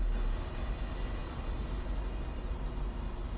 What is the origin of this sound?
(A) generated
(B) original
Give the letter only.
B